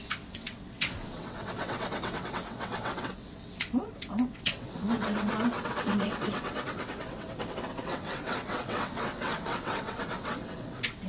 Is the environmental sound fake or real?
fake